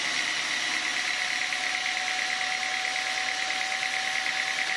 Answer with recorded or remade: recorded